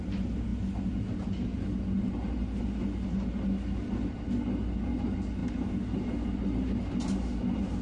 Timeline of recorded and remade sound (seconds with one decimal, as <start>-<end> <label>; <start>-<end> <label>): 0.0-7.8 recorded